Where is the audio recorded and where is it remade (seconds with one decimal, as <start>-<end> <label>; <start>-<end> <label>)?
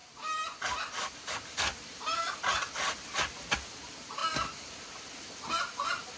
0.0-6.2 recorded